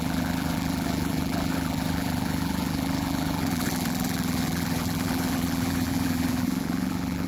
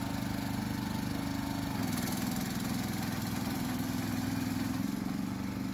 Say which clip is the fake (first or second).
first